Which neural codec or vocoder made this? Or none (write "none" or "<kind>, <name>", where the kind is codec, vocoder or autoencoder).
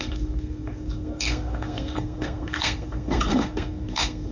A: codec, SNAC